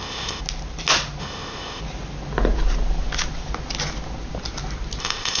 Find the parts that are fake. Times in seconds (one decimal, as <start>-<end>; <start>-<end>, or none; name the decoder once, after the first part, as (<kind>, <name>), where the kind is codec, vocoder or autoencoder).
0.0-0.4 (codec, ZipCodec); 1.2-1.8; 5.0-5.4